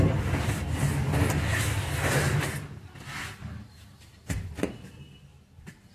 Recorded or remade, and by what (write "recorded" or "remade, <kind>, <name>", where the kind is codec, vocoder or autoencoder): recorded